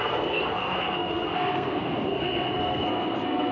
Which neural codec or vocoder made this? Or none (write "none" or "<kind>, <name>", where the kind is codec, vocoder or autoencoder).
codec, SNAC